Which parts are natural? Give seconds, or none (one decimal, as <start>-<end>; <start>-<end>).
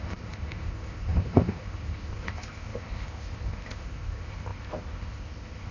none